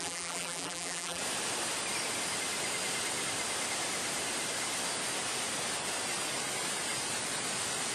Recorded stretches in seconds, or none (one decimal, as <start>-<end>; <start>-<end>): 1.2-7.9